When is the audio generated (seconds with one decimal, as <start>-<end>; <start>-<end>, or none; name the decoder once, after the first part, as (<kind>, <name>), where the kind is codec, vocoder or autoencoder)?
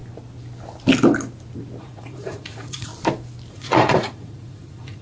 1.8-2.9 (vocoder, Vocos); 3.5-5.0